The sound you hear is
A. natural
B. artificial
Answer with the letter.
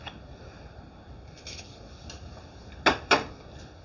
A